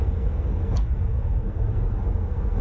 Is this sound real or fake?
fake